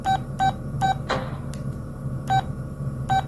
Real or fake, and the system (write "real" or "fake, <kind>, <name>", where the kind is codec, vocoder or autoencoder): real